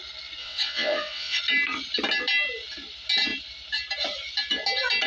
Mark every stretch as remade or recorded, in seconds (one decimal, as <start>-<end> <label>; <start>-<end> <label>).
0.0-0.4 recorded; 0.4-1.4 remade; 1.4-5.1 recorded